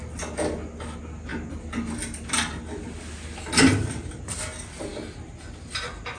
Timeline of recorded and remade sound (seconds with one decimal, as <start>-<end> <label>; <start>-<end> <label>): 0.0-6.2 recorded